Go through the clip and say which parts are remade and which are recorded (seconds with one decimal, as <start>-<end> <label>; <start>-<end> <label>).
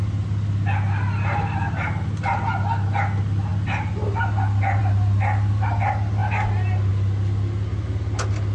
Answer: 0.0-8.5 recorded